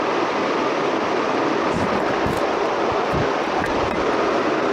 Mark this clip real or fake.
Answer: fake